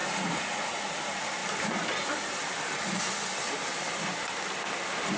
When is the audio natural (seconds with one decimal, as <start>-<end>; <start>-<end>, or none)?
0.7-5.2